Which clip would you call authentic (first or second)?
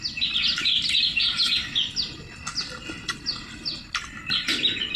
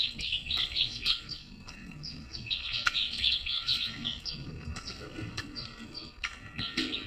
first